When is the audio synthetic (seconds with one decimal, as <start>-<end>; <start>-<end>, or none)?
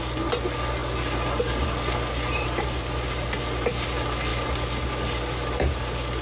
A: none